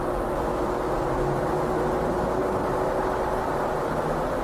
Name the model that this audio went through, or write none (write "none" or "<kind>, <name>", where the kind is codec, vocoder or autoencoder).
none